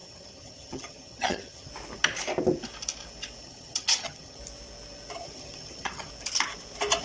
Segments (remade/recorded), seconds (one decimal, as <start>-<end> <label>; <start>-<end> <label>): 0.0-1.7 remade; 1.7-3.4 recorded; 3.4-4.4 remade; 4.4-5.2 recorded; 5.2-6.1 remade; 6.1-7.0 recorded